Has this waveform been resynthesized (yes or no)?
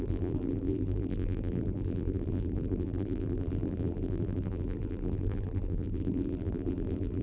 yes